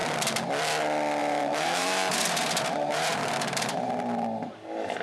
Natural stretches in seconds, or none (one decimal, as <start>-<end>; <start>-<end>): 0.0-1.2; 3.9-5.0